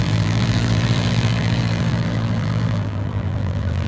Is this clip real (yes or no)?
no